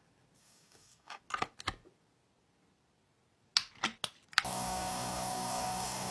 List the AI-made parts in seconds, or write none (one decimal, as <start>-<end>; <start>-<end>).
0.4-1.2; 4.5-6.1

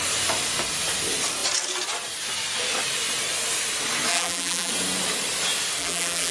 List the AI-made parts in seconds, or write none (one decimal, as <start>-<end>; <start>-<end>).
4.1-4.7; 5.8-6.3

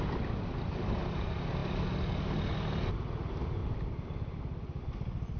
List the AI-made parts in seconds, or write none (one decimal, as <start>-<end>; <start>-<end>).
none

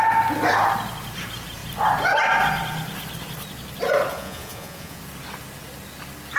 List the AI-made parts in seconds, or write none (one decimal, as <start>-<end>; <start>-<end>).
4.1-5.0